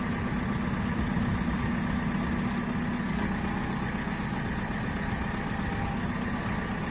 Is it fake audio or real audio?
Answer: real